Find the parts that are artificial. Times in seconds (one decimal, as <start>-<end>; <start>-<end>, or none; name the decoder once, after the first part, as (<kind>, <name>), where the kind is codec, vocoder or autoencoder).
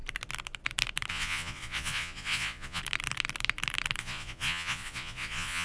1.1-2.8 (vocoder, Vocos); 4.0-5.6